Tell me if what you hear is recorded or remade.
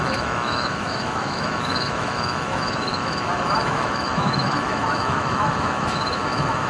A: remade